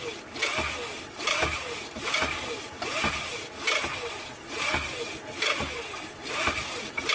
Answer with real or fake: real